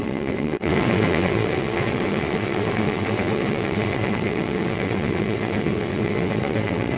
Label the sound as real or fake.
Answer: fake